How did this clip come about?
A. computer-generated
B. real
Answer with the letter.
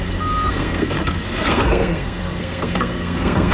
A